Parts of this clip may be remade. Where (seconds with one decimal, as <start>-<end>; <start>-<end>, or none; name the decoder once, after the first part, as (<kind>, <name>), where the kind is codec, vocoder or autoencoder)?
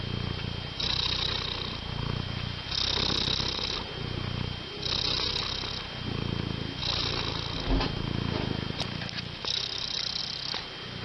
none